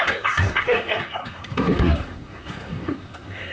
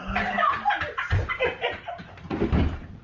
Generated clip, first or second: first